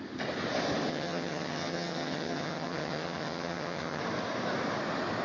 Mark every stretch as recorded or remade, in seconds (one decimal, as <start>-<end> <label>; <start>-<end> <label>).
0.0-0.9 recorded; 0.9-4.0 remade; 4.0-5.2 recorded